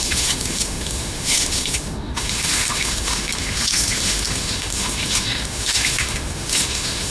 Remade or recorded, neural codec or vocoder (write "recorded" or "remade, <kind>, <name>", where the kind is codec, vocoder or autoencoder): remade, autoencoder, DAC-VAE